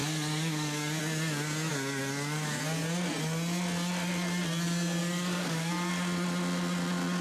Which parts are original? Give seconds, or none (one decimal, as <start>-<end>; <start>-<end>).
1.0-1.7; 2.6-5.0; 5.7-7.2